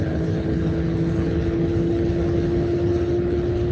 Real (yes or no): no